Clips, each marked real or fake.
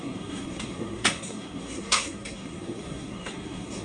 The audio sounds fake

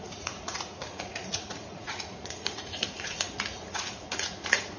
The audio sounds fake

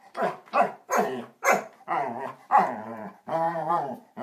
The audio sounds fake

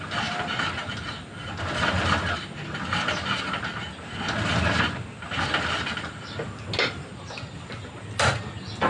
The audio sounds real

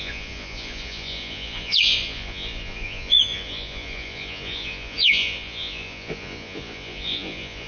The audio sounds fake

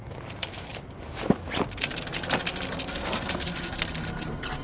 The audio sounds real